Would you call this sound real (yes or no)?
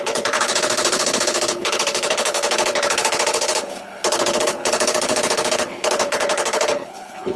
no